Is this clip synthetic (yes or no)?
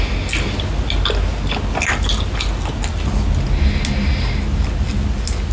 no